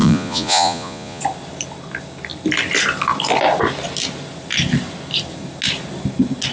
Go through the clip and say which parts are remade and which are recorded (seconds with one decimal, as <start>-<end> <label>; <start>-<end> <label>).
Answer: 0.0-1.2 remade; 1.2-6.5 recorded